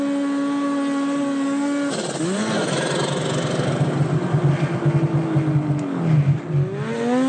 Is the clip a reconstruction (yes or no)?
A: no